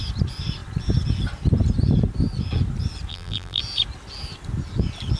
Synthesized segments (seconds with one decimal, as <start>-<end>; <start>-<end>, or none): 3.1-3.6